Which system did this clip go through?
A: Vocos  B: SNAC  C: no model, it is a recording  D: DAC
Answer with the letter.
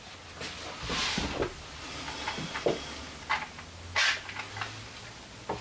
C